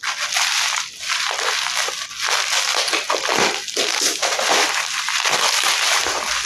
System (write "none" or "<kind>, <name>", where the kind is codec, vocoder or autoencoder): vocoder, BigVGAN v2